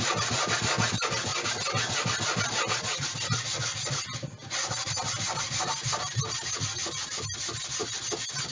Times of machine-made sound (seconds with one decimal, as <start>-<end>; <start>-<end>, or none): none